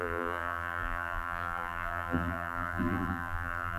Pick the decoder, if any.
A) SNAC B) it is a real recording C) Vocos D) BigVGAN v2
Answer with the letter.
D